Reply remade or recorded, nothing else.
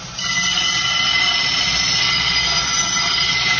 recorded